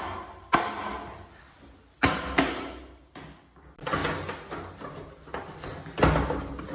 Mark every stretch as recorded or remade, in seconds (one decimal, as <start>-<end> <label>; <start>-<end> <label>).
0.0-6.7 recorded